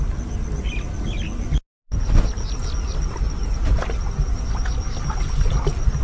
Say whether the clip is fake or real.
real